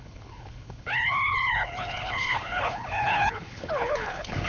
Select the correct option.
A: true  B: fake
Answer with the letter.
B